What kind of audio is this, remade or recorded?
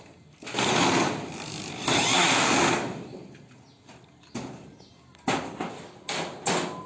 recorded